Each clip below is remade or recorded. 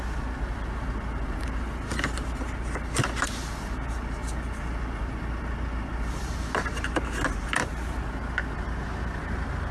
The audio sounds recorded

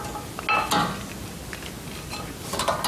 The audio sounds recorded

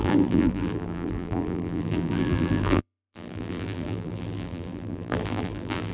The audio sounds remade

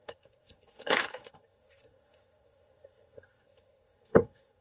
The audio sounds remade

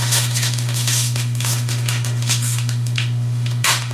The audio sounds remade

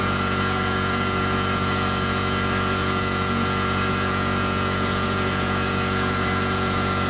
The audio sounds remade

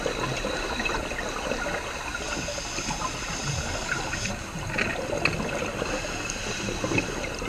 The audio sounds recorded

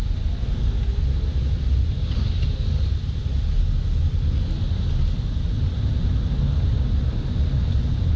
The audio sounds recorded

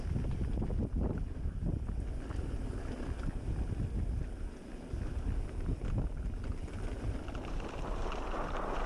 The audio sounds recorded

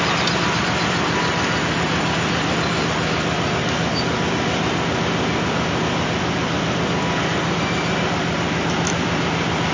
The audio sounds recorded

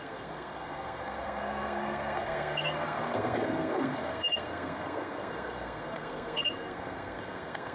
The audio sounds remade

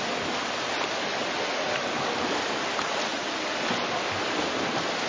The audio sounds recorded